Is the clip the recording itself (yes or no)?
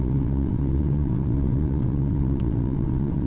no